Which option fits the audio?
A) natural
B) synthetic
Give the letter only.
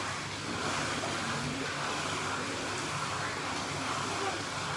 A